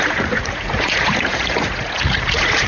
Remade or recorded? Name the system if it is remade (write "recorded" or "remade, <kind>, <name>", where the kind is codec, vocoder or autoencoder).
remade, vocoder, Vocos